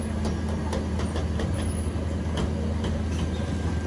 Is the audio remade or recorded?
recorded